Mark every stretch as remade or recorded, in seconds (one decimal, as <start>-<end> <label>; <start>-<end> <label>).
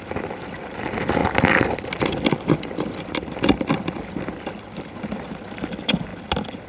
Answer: 0.0-6.7 recorded